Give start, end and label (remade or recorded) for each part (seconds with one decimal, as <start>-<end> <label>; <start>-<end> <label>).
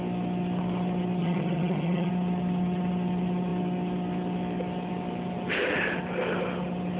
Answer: 0.0-1.2 recorded; 1.2-2.1 remade; 2.1-7.0 recorded